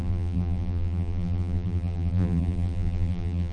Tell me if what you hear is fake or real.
fake